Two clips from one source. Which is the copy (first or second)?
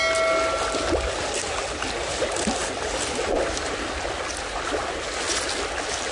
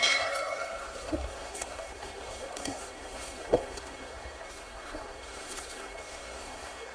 second